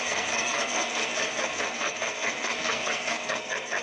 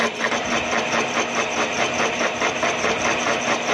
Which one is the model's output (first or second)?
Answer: first